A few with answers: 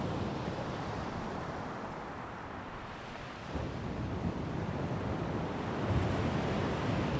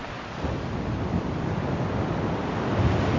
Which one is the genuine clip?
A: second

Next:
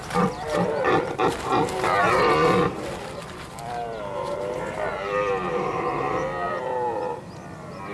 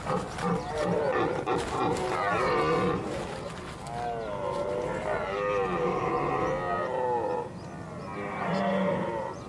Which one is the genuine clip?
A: second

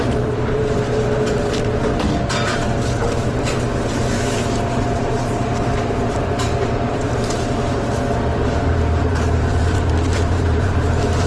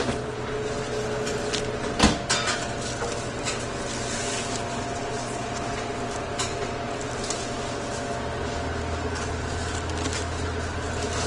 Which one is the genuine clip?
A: second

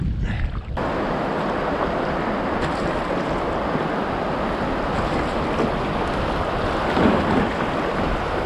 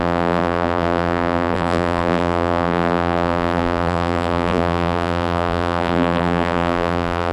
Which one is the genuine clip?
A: first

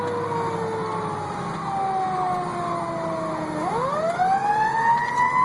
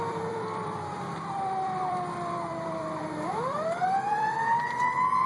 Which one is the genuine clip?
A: first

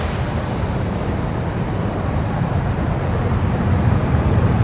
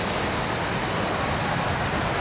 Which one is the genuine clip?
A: second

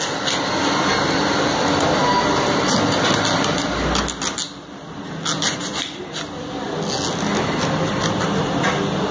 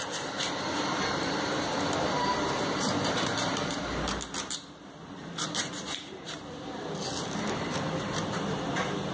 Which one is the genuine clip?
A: first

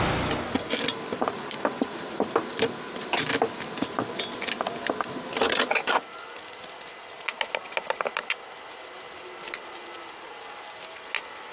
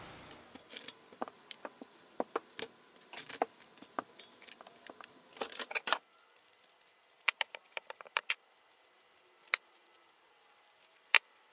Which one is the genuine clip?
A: first